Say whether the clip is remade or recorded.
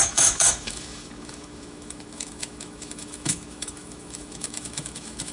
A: remade